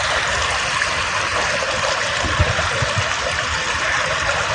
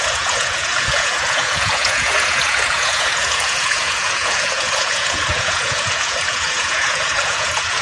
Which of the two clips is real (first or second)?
first